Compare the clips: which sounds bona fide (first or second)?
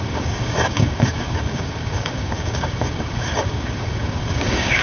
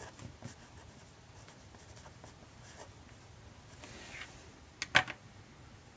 second